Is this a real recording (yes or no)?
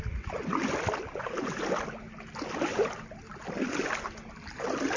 yes